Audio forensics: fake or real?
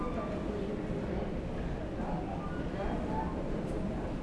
real